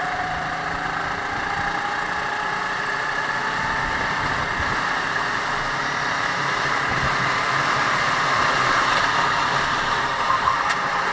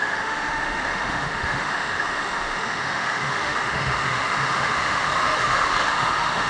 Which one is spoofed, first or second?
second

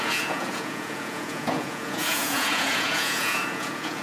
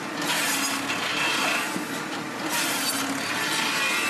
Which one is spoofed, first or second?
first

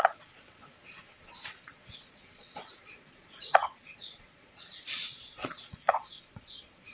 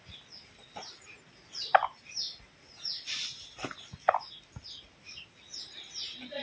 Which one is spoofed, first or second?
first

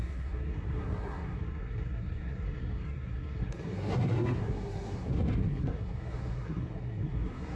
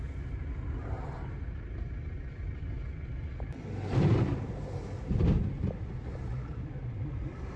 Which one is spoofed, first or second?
first